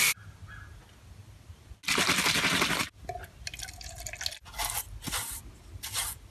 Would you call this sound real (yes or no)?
yes